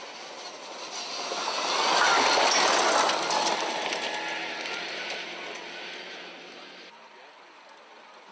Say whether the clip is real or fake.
real